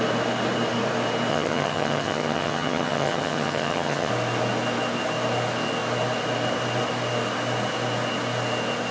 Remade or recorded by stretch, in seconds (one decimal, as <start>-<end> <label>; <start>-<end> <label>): 0.0-1.3 recorded; 1.3-4.1 remade; 4.1-8.9 recorded